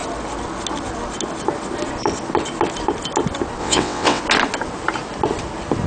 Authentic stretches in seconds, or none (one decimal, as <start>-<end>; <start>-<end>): 0.0-3.6; 4.2-5.9